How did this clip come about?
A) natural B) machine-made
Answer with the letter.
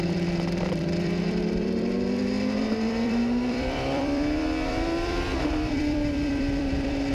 B